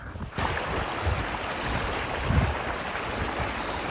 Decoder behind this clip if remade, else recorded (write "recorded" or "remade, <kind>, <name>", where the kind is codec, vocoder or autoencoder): recorded